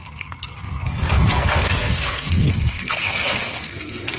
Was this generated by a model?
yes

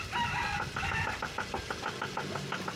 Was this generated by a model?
no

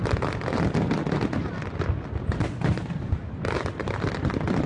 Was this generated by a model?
no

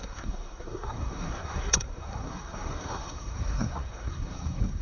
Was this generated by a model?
yes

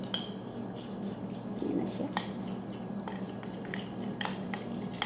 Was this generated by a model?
no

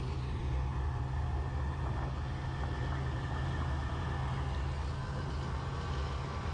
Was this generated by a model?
no